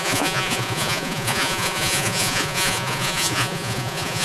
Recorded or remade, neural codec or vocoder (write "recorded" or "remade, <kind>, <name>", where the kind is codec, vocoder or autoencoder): remade, vocoder, Vocos